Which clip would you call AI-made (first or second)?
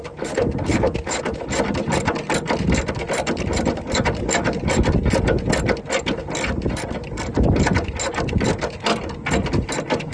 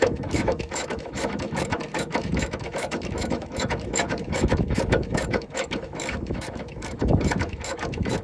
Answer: second